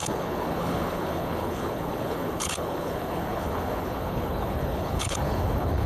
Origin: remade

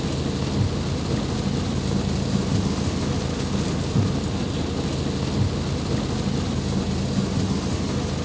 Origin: recorded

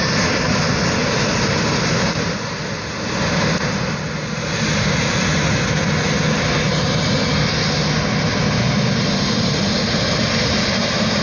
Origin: recorded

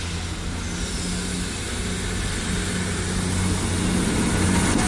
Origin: recorded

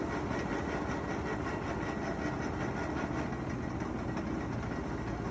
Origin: recorded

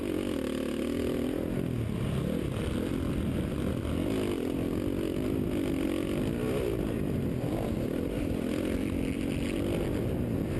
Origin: recorded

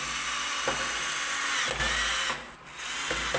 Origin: recorded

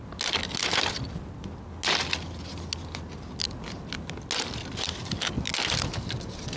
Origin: recorded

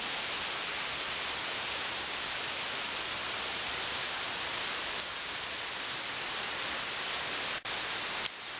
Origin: recorded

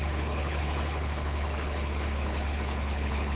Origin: remade